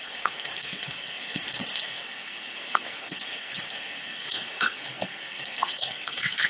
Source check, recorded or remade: remade